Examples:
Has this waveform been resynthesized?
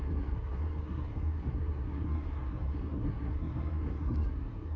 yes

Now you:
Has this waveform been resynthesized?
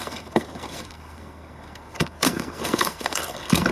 yes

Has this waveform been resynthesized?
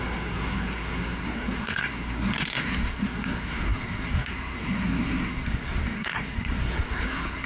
yes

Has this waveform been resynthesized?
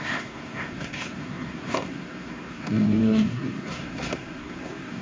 yes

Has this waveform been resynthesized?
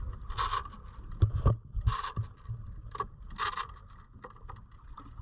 no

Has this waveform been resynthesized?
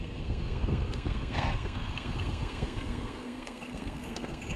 yes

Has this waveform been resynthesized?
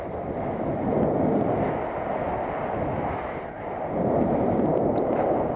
no